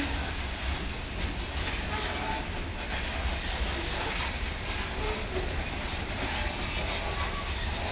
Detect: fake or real real